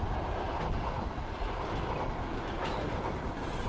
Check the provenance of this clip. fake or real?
real